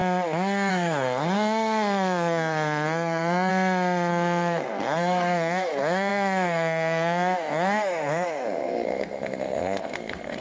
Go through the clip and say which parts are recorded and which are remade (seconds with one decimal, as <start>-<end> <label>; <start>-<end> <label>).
0.0-0.7 recorded; 0.7-3.5 remade; 3.5-4.1 recorded; 4.1-10.4 remade